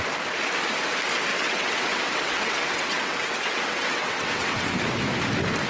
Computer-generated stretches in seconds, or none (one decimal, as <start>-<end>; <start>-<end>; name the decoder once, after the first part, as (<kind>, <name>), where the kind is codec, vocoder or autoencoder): 1.3-4.7 (vocoder, WaveNeXt)